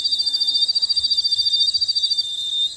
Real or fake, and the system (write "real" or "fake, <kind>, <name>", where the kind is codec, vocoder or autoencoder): real